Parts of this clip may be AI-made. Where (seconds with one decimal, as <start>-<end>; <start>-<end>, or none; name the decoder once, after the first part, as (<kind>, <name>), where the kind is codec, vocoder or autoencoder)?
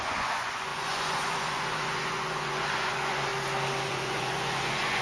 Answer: 0.0-3.3 (vocoder, Vocos); 3.9-5.0